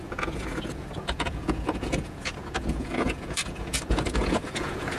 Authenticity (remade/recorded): remade